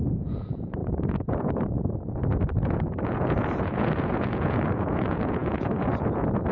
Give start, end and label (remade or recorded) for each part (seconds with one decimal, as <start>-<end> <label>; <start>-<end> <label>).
0.0-6.5 remade